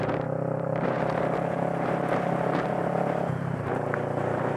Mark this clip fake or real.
fake